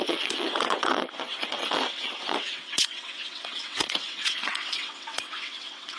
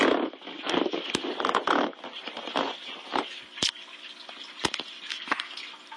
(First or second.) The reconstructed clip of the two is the first